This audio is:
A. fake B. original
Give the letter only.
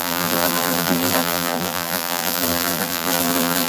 A